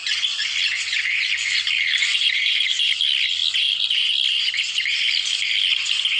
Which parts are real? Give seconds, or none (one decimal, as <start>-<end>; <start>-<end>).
0.0-1.4; 3.0-6.2